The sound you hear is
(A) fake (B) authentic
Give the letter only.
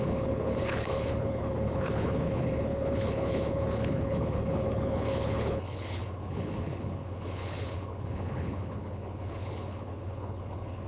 A